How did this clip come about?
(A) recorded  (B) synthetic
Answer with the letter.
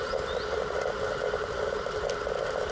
A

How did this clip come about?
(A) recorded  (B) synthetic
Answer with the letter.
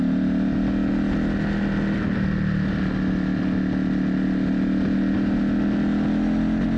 A